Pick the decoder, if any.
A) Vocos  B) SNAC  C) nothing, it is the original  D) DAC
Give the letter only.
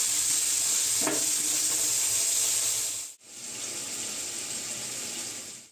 C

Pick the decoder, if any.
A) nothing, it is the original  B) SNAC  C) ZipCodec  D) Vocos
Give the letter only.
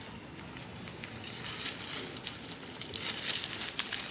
A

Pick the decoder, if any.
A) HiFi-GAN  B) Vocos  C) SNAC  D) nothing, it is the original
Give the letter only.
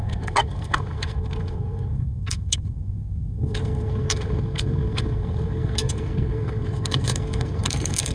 C